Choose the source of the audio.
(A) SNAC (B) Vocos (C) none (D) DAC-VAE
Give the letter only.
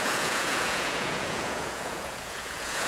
B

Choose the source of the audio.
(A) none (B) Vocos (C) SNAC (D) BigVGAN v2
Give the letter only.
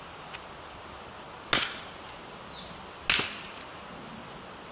A